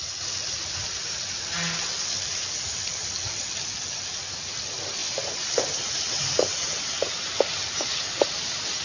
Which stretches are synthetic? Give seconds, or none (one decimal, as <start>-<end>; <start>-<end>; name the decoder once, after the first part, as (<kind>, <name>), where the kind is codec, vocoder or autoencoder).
none